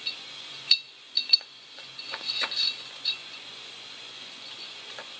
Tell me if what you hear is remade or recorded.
remade